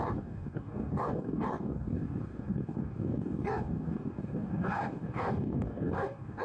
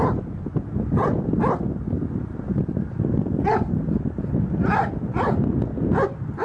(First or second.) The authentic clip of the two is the second